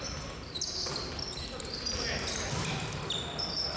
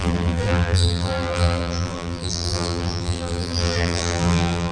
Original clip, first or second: first